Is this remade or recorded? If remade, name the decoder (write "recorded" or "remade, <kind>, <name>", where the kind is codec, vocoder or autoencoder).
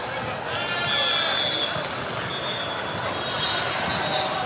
recorded